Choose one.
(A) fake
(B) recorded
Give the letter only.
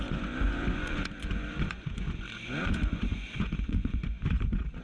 A